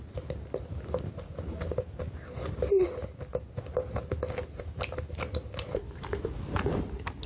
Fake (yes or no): no